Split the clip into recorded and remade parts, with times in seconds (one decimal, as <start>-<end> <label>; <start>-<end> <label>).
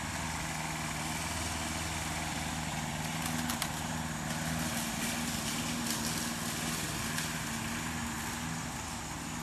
0.0-9.4 recorded